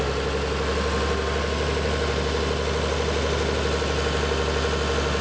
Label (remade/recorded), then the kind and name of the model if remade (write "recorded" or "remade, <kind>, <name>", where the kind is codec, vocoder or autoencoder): recorded